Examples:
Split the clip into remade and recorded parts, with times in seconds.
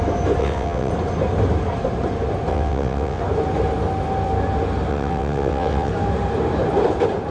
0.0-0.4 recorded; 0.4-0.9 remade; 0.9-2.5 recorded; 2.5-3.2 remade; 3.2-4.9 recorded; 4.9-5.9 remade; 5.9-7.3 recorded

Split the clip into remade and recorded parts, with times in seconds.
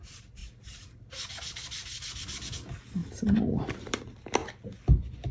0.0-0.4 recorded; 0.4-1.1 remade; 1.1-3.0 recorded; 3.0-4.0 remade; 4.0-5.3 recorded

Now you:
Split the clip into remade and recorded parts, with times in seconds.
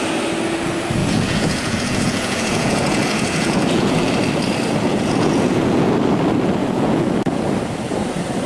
0.0-1.0 recorded; 1.0-4.1 remade; 4.1-4.9 recorded; 4.9-5.9 remade; 5.9-6.6 recorded; 6.6-7.4 remade; 7.4-8.5 recorded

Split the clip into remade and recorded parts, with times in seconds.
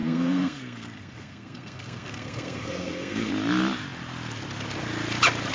0.0-3.3 remade; 3.3-5.5 recorded